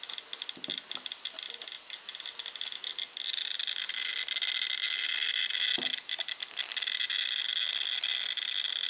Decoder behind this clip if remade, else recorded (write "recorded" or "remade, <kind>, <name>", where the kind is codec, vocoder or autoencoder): recorded